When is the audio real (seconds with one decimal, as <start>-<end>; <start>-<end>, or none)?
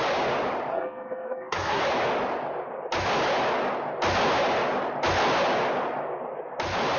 0.0-0.7; 1.8-7.0